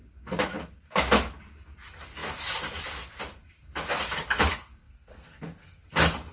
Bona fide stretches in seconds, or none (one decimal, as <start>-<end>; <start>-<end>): 0.0-4.8; 5.8-6.3